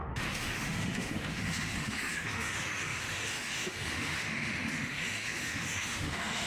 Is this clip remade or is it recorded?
remade